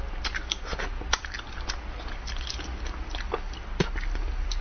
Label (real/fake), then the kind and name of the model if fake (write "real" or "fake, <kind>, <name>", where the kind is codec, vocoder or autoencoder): real